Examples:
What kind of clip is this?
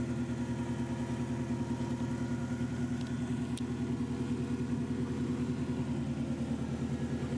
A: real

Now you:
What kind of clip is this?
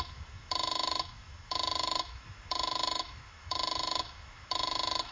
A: fake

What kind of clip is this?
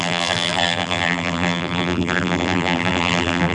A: fake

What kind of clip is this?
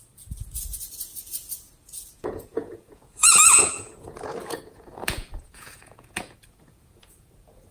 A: fake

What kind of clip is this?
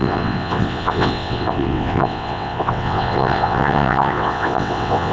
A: fake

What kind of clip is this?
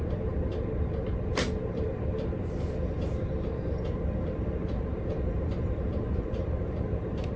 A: fake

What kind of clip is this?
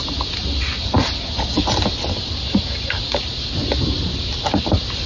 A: real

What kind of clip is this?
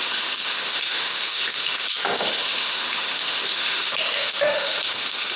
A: fake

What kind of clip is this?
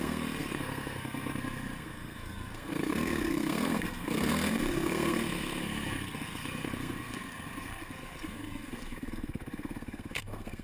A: fake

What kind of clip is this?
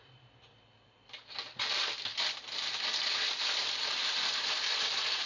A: real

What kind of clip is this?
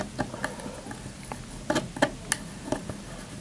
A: real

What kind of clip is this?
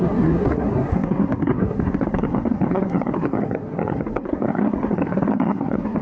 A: fake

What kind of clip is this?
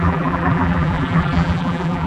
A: fake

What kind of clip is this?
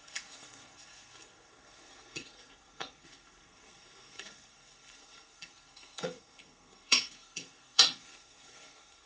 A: fake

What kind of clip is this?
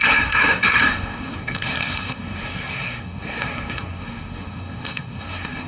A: fake